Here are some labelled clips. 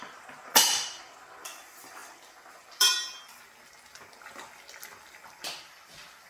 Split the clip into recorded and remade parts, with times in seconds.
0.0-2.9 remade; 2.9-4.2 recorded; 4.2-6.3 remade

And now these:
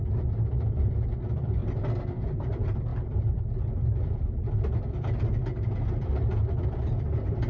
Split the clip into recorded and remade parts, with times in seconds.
0.0-1.6 remade; 1.6-2.2 recorded; 2.2-5.4 remade; 5.4-5.9 recorded; 5.9-7.5 remade

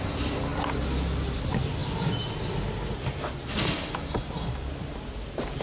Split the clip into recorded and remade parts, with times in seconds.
0.0-1.8 remade; 1.8-5.6 recorded

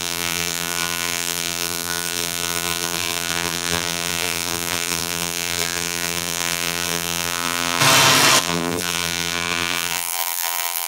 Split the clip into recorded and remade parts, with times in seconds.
0.0-7.8 remade; 7.8-8.4 recorded; 8.4-10.9 remade

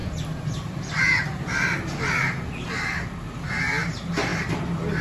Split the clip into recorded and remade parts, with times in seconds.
0.0-5.0 recorded

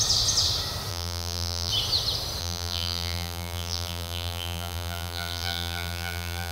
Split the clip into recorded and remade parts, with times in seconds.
0.0-0.9 recorded; 0.9-1.7 remade; 1.7-2.4 recorded; 2.4-6.5 remade